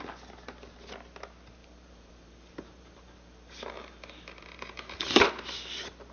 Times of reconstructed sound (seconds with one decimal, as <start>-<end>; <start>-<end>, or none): 1.6-5.3